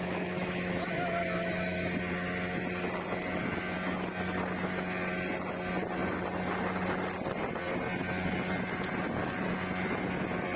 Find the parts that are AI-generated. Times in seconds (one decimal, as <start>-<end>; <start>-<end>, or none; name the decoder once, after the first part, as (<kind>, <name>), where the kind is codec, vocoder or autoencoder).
0.0-2.0 (autoencoder, DAC-VAE)